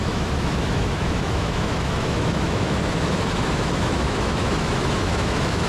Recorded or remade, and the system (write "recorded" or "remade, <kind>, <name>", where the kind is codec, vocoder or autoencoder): remade, autoencoder, DAC-VAE